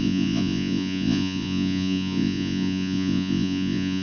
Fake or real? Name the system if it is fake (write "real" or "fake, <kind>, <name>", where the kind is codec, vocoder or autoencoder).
fake, vocoder, Vocos